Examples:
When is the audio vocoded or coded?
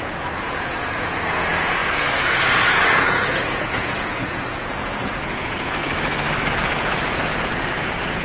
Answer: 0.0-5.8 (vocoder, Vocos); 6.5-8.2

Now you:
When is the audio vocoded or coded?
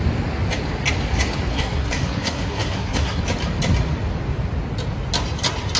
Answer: 1.5-3.2 (codec, SNAC)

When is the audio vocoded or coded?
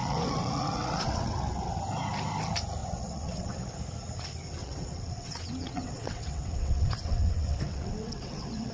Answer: 0.0-1.8 (vocoder, WaveNeXt); 2.8-3.5; 4.6-8.7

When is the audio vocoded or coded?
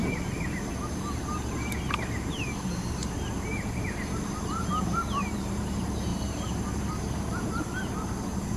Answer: 0.9-3.0 (vocoder, BigVGAN v2); 4.6-8.6